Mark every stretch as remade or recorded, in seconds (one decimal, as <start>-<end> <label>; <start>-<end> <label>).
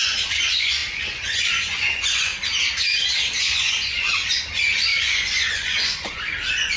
0.0-2.3 remade; 2.3-3.4 recorded; 3.4-6.8 remade